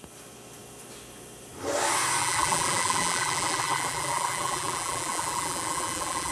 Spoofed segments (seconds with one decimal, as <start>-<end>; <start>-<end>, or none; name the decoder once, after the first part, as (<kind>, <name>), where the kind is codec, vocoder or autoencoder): 2.2-6.3 (vocoder, BigVGAN v2)